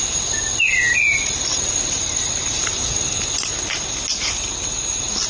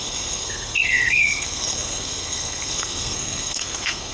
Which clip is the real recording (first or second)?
first